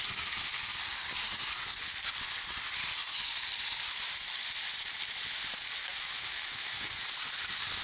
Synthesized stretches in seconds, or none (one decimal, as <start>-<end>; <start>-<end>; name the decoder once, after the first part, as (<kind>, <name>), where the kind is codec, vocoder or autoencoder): 5.8-6.9 (autoencoder, DAC-VAE)